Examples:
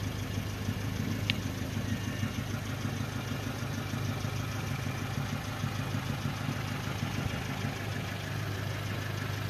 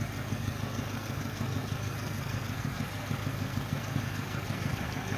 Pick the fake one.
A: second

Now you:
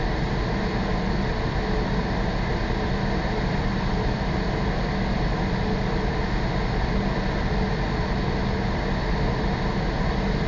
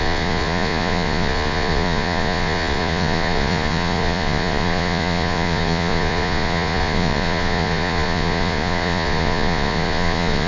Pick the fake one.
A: second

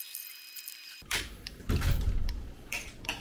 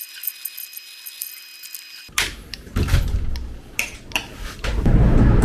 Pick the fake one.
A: first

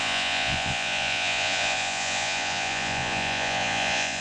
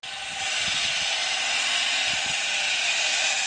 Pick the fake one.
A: first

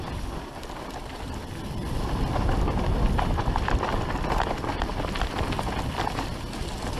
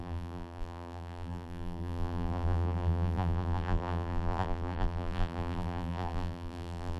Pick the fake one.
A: second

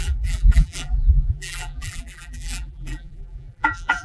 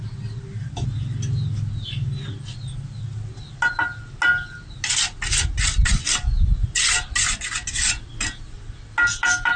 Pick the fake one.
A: first